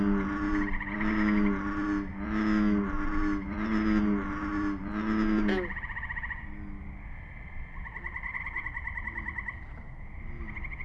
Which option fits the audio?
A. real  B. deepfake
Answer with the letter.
A